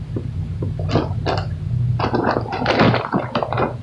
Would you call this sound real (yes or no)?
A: no